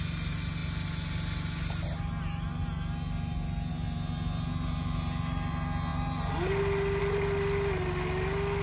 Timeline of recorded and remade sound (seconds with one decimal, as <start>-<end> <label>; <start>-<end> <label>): 0.0-8.6 recorded